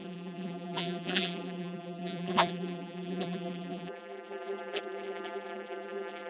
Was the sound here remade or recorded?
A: remade